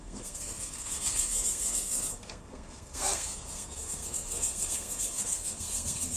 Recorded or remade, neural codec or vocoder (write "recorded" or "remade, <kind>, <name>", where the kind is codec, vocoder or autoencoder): remade, codec, SNAC